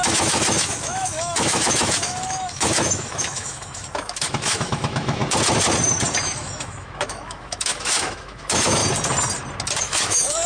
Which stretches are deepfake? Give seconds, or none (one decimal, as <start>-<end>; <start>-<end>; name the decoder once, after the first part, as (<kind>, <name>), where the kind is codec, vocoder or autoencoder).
0.0-5.2 (autoencoder, DAC-VAE); 6.2-8.8; 9.8-10.5

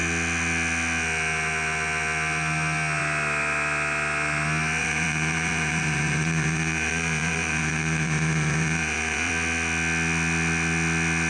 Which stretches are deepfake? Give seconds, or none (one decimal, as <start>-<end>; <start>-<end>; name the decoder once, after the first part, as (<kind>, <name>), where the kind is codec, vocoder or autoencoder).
4.8-9.3 (vocoder, Vocos)

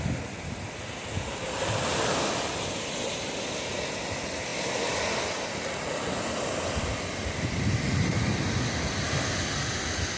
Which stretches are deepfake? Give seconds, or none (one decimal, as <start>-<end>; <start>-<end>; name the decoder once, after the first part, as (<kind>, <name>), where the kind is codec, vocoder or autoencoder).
none

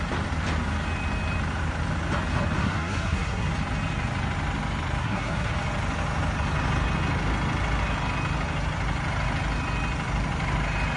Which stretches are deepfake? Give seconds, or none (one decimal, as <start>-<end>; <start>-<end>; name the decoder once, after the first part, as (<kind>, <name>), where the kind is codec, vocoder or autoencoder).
2.6-3.5 (codec, SNAC); 5.0-5.5

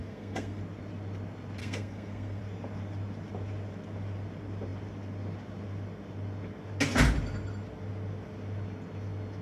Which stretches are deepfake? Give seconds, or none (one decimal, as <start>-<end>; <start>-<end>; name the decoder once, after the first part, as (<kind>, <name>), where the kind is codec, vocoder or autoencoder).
0.0-0.6 (codec, SNAC); 1.6-2.4

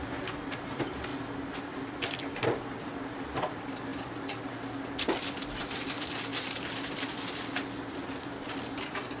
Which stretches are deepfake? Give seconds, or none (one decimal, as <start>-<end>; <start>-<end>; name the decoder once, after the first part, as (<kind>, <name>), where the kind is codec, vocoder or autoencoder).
none

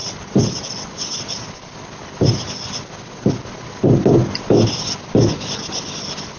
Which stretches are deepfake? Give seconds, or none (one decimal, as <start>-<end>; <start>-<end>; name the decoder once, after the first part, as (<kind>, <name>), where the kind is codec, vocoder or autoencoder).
none